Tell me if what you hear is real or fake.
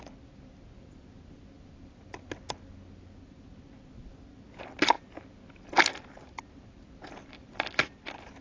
real